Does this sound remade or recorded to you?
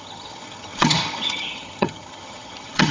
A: remade